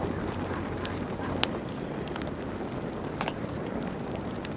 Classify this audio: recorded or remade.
recorded